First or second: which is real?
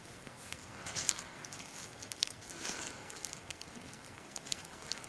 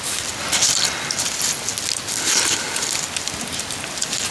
second